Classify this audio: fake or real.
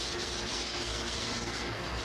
fake